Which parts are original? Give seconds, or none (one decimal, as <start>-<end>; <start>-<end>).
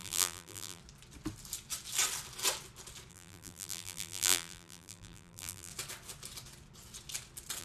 0.8-3.1; 5.7-7.6